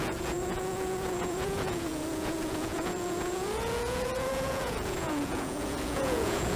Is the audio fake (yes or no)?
yes